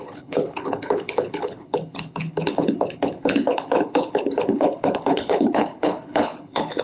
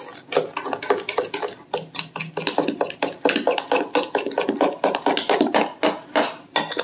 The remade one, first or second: first